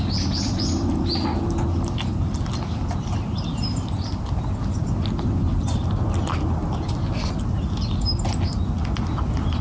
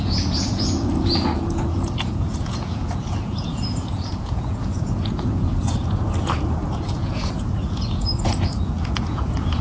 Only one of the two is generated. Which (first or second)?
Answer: second